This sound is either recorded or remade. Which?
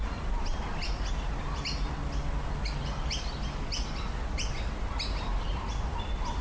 recorded